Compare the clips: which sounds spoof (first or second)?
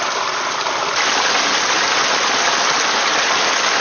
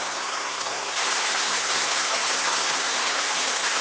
second